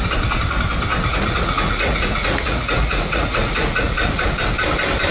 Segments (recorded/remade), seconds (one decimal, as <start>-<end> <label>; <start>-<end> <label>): 0.0-1.1 recorded; 1.1-4.2 remade; 4.2-5.1 recorded